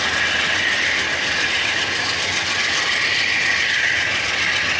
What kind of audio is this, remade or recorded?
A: recorded